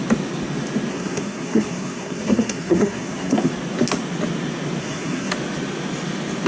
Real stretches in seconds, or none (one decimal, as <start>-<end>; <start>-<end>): 0.0-0.9; 3.5-4.8; 5.3-6.5